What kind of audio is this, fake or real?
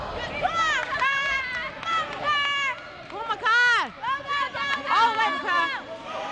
real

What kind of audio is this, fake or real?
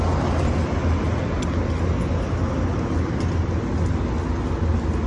real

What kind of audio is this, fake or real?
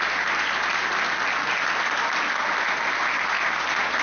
real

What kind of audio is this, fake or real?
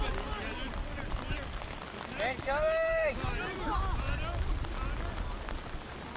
real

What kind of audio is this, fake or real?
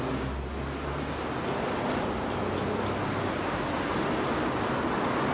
real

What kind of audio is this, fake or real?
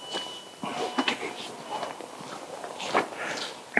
real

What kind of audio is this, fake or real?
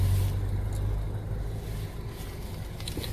real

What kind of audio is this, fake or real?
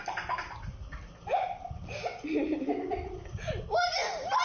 real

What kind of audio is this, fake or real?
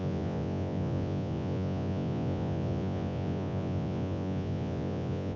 fake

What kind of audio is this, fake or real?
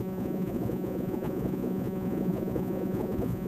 fake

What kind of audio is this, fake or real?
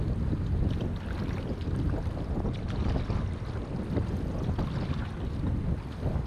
real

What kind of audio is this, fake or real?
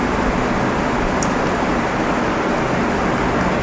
real